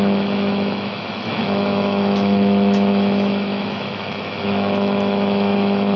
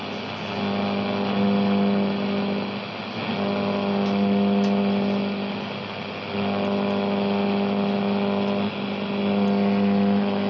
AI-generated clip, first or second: first